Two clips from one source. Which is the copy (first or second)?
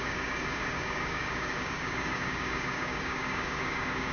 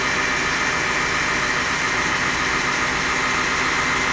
first